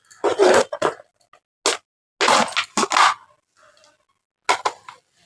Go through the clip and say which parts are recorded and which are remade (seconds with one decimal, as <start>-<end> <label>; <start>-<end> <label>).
0.0-5.3 recorded